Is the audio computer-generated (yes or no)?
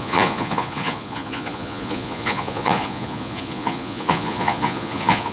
yes